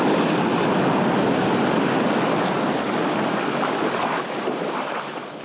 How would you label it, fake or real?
real